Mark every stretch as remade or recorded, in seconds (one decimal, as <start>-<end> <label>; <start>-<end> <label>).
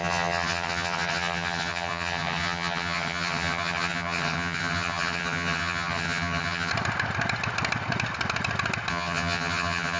0.0-6.7 remade; 6.7-8.9 recorded; 8.9-10.0 remade